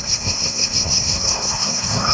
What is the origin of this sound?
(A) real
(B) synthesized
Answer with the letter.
B